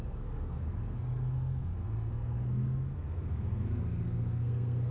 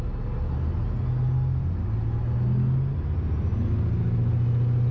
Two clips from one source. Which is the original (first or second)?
second